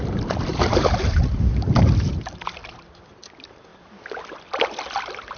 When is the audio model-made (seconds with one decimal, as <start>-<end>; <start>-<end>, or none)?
0.5-1.4